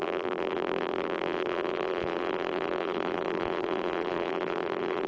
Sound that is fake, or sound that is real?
fake